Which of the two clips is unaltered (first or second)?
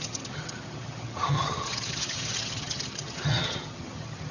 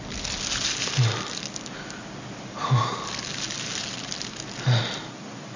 second